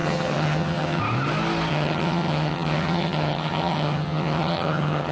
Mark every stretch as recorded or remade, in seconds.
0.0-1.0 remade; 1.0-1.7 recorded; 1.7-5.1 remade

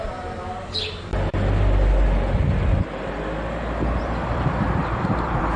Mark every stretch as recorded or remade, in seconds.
0.0-1.1 remade; 1.1-4.0 recorded; 4.0-5.6 remade

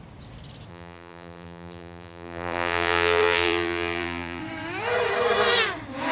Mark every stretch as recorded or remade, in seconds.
0.0-0.7 recorded; 0.7-4.4 remade; 4.4-6.1 recorded

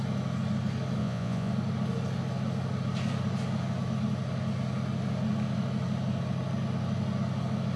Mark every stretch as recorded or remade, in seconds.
0.0-1.0 recorded; 1.0-1.5 remade; 1.5-7.8 recorded

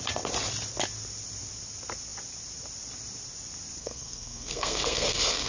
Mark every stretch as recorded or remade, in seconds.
0.0-3.8 recorded; 3.8-5.5 remade